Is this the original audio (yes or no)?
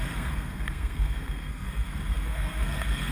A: no